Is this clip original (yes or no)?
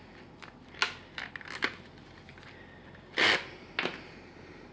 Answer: yes